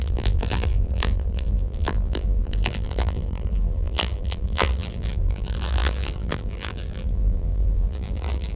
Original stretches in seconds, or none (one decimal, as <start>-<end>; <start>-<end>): none